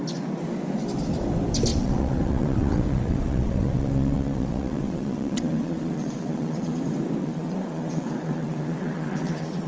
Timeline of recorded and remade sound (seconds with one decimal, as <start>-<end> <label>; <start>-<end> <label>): 0.0-1.7 recorded; 1.7-6.8 remade; 6.8-7.2 recorded; 7.2-9.7 remade

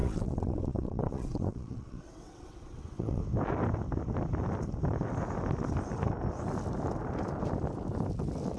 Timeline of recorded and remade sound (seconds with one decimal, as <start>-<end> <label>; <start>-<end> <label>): 0.0-3.2 remade; 3.2-8.6 recorded

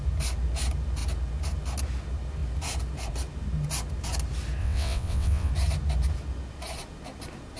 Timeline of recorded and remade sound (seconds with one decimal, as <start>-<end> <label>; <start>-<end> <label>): 0.0-4.6 recorded; 4.6-5.5 remade; 5.5-7.6 recorded

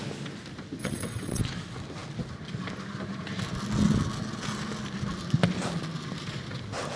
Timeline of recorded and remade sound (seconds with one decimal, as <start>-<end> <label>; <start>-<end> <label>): 0.0-0.8 recorded; 0.8-1.4 remade; 1.4-7.0 recorded

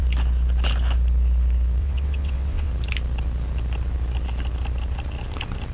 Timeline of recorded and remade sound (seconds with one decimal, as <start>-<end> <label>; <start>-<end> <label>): 0.0-1.8 recorded; 1.8-2.7 remade; 2.7-5.7 recorded

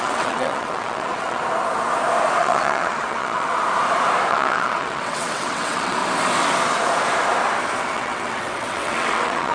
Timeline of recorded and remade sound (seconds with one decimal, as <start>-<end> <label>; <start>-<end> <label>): 0.0-1.4 remade; 1.4-2.4 recorded; 2.4-3.5 remade; 3.5-4.3 recorded; 4.3-6.0 remade; 6.0-7.8 recorded; 7.8-9.5 remade